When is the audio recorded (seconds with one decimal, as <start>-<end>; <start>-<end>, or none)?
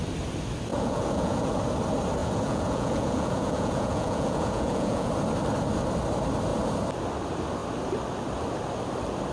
0.0-0.7; 1.5-2.2; 5.1-9.3